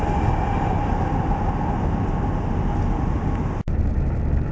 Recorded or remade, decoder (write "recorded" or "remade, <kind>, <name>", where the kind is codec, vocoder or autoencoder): recorded